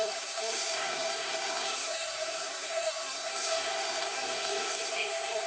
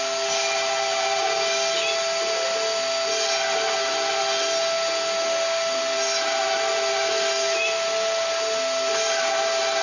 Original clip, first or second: second